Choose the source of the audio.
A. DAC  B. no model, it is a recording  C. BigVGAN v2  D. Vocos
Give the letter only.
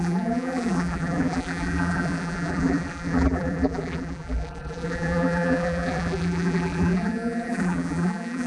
C